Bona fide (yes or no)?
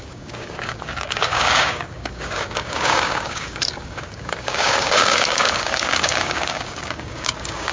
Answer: no